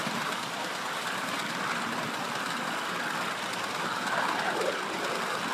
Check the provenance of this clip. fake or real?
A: real